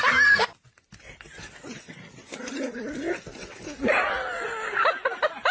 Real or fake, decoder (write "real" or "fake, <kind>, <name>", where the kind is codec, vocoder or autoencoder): real